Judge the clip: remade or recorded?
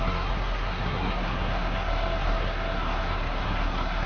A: remade